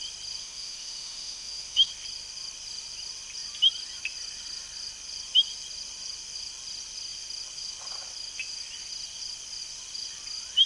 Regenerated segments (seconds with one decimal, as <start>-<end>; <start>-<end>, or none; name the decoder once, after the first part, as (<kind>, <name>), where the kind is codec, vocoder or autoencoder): 0.4-1.9 (autoencoder, DAC-VAE)